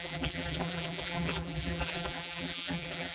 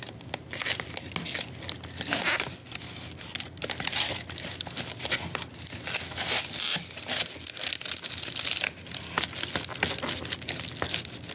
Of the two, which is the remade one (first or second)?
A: first